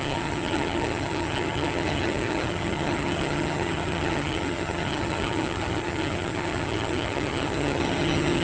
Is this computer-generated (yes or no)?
yes